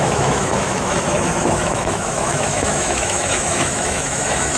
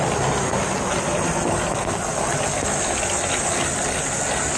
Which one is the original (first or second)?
second